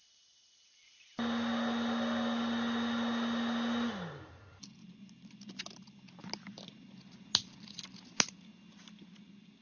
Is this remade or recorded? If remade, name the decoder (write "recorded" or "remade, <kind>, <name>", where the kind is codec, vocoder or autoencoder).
recorded